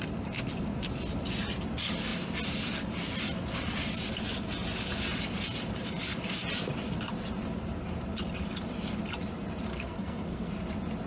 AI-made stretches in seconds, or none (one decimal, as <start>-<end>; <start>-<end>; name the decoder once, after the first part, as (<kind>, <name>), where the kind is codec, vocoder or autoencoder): 9.7-10.5 (codec, SNAC)